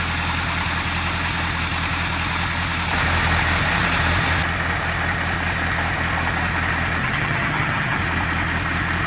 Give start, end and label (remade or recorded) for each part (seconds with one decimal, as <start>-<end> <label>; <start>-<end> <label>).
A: 0.0-7.0 recorded; 7.0-8.0 remade; 8.0-9.1 recorded